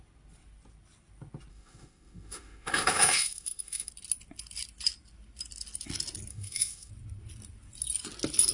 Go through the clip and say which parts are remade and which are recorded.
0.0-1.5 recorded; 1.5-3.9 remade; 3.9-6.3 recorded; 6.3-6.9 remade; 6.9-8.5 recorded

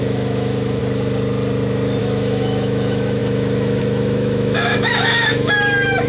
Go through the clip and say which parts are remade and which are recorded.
0.0-0.8 remade; 0.8-2.0 recorded; 2.0-6.1 remade